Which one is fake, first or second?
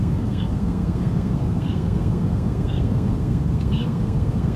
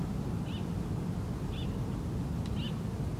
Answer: first